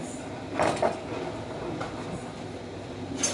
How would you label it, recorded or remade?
recorded